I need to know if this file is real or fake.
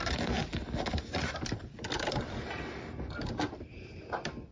real